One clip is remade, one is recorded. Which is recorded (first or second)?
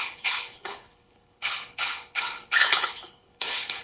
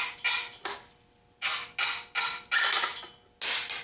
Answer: second